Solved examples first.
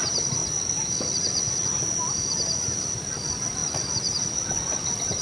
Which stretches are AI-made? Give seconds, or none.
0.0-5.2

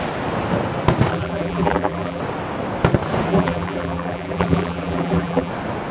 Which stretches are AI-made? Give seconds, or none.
1.1-2.2; 3.3-5.5

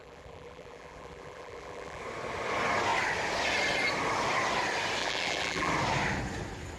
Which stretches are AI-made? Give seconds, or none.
0.0-2.0; 5.0-5.7

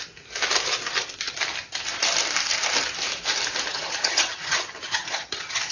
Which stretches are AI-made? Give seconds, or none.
3.7-5.7

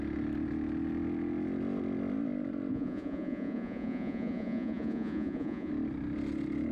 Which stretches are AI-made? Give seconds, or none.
2.7-5.7